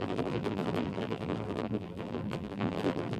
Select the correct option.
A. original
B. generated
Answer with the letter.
B